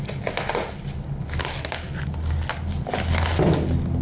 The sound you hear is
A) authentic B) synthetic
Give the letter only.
A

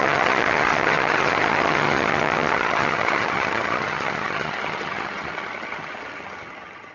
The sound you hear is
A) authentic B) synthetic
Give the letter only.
B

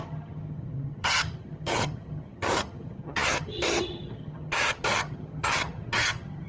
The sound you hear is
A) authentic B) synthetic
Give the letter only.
B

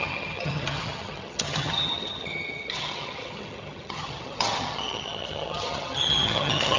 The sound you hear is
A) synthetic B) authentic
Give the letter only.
A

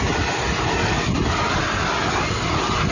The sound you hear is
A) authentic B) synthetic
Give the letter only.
A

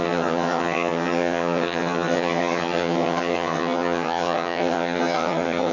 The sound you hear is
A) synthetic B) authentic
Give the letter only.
A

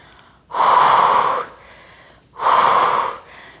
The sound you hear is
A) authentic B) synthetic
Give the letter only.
A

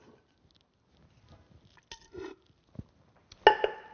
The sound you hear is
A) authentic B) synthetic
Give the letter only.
A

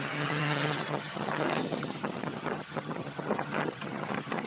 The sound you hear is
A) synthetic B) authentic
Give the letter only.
A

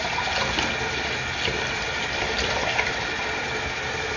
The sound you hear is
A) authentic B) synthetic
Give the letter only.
A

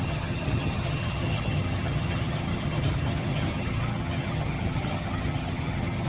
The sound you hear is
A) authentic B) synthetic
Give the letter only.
B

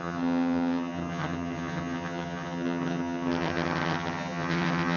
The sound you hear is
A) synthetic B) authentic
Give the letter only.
A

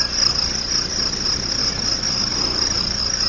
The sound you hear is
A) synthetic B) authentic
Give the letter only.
B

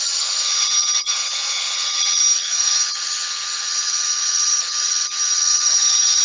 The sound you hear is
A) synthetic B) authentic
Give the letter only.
A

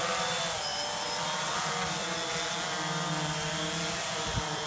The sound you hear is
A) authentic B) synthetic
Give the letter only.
A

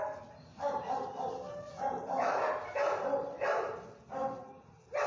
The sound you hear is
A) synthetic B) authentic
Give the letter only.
B